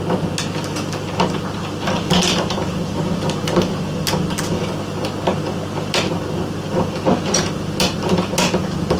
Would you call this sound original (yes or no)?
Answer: yes